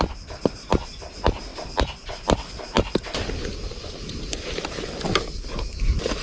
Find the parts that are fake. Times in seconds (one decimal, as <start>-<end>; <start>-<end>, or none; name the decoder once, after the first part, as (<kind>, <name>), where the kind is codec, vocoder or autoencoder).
none